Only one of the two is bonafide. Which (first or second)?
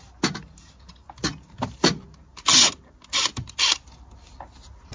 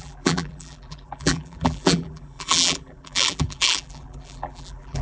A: first